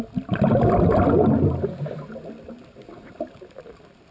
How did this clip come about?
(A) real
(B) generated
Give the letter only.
A